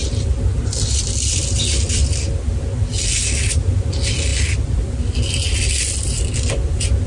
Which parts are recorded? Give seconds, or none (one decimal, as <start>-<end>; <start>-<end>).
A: 0.0-7.1